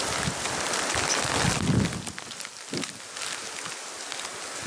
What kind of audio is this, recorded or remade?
recorded